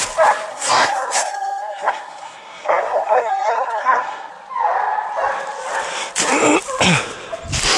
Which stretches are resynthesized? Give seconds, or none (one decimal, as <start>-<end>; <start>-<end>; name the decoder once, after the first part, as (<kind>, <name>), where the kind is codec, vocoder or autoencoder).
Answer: 0.5-4.3 (codec, SNAC)